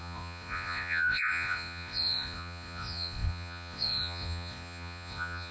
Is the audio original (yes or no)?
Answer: no